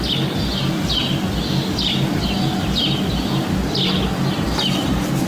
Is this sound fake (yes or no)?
no